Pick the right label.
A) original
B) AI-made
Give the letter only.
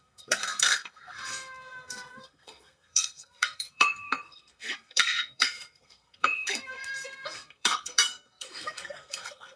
B